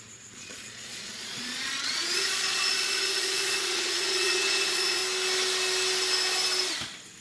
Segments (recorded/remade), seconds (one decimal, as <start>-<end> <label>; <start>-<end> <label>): 0.0-5.0 remade; 5.0-7.2 recorded